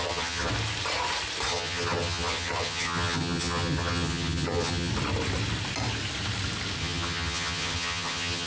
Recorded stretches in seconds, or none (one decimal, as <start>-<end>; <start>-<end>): 0.5-1.5; 4.9-6.8